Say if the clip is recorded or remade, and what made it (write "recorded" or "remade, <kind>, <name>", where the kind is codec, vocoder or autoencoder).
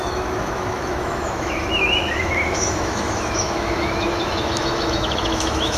remade, autoencoder, DAC-VAE